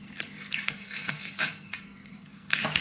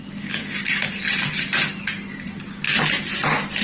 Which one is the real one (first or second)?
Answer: second